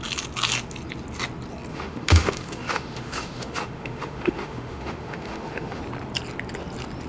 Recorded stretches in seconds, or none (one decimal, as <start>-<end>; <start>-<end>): 0.0-1.7; 5.8-7.1